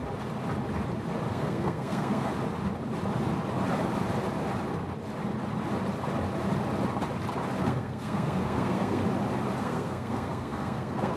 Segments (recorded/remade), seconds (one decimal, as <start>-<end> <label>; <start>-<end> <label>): 0.0-1.3 recorded; 1.3-2.3 remade; 2.3-7.6 recorded; 7.6-9.0 remade; 9.0-9.6 recorded; 9.6-11.2 remade